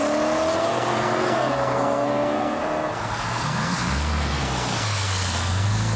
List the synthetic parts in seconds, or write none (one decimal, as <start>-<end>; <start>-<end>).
0.6-6.0

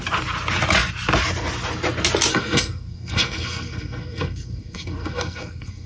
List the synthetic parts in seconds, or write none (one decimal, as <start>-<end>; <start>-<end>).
2.3-5.9

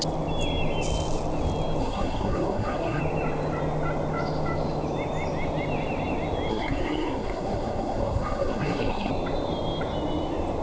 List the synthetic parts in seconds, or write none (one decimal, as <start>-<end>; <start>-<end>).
1.8-3.0; 6.5-9.1

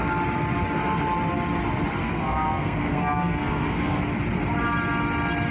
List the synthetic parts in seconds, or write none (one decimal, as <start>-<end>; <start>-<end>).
2.0-4.0

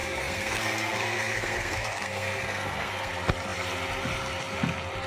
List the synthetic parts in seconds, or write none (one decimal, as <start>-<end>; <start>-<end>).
0.0-3.1

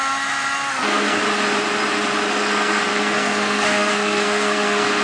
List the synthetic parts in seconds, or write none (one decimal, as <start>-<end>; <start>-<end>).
0.7-1.2; 2.3-5.0

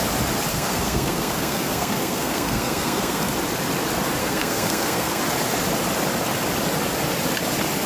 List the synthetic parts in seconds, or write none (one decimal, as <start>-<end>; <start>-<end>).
0.5-3.2; 4.2-5.2

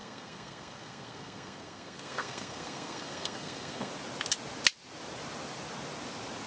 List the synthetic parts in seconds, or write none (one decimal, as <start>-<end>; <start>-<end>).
0.0-3.9